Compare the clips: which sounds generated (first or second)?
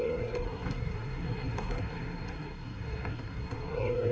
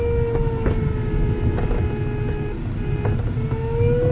first